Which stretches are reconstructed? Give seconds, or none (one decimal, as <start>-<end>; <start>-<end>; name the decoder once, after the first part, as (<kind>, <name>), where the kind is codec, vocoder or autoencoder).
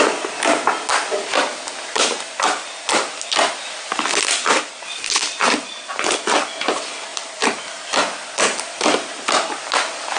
none